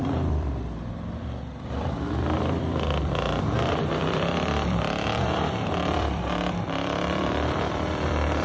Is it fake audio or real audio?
fake